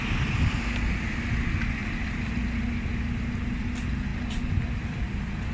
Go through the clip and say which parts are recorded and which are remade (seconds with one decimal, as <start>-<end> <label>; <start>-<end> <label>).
0.0-1.8 recorded; 1.8-2.4 remade; 2.4-5.5 recorded